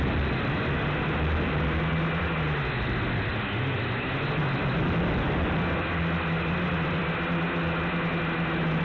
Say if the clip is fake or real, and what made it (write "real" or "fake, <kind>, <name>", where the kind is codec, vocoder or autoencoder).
real